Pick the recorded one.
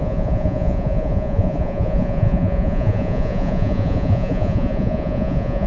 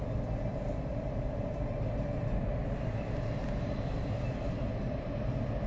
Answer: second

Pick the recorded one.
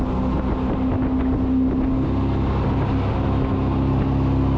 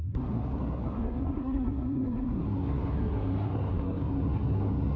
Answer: first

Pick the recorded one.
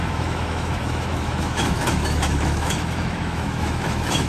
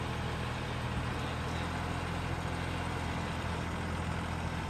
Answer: second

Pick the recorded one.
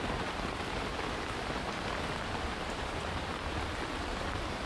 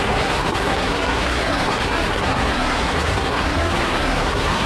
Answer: first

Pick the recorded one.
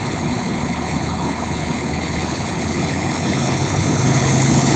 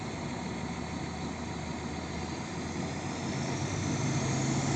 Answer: second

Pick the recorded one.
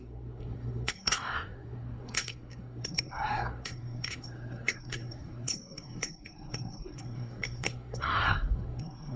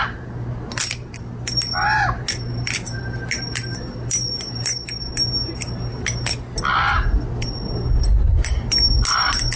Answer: second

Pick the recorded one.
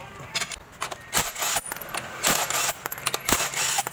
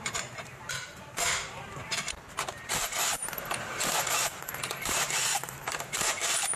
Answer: first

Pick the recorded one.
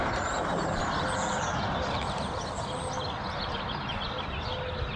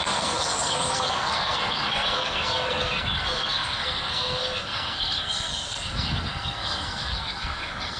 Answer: first